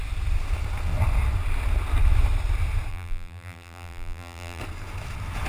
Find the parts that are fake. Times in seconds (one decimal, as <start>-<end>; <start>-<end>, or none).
2.9-4.6